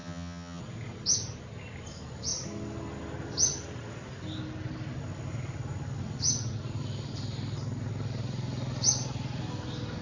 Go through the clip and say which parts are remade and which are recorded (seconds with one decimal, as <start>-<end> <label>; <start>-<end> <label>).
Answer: 0.0-0.6 remade; 0.6-10.0 recorded